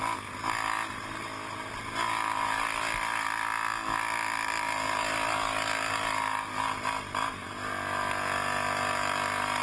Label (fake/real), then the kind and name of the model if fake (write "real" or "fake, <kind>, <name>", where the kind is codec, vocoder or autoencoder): real